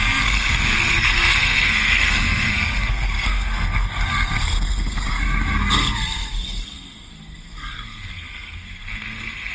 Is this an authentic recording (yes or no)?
no